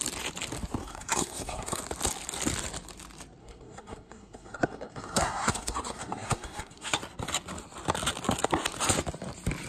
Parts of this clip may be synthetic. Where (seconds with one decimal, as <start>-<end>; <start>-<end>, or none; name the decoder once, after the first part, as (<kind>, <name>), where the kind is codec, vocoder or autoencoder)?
0.8-1.8 (codec, SNAC); 3.4-7.0